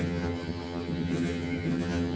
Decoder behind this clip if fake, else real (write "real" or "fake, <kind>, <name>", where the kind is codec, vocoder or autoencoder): fake, vocoder, HiFi-GAN